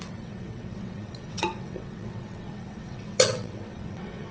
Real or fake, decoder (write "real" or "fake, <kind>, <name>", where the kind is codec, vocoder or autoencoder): fake, vocoder, WaveNeXt